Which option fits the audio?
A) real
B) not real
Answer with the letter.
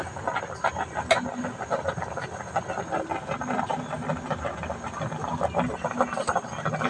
A